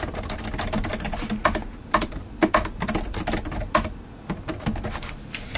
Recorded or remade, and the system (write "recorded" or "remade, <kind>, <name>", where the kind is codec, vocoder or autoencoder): recorded